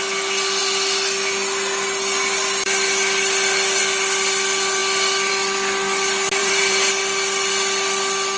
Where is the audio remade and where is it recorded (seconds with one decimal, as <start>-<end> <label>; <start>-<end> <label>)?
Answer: 0.0-6.4 recorded; 6.4-6.9 remade; 6.9-8.4 recorded